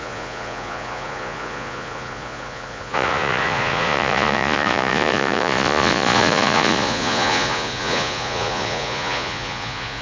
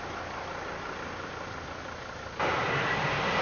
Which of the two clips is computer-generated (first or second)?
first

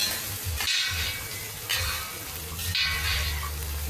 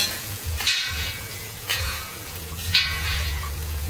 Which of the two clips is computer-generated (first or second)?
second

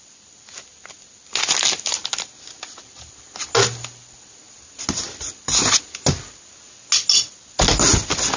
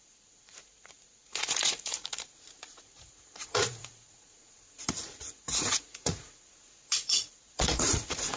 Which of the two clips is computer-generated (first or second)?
second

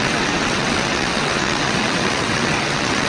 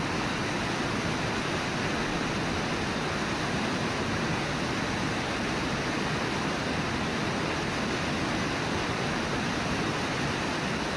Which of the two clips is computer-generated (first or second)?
first